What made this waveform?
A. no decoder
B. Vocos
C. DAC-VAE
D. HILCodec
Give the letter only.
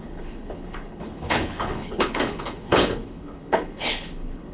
D